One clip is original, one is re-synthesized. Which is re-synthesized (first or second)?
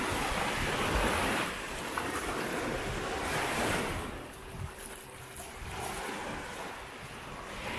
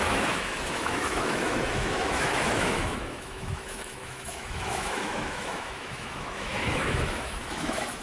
second